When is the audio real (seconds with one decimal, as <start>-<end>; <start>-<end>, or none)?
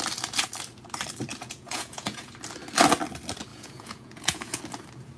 0.0-1.3; 2.3-3.5; 4.6-5.2